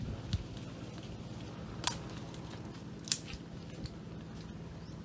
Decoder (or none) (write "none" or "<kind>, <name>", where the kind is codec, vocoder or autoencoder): none